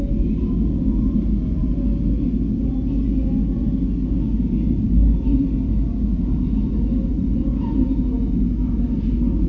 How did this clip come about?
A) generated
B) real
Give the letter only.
B